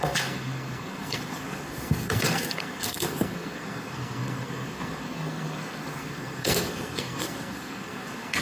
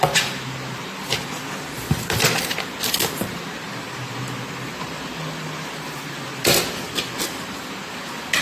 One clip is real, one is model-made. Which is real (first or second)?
second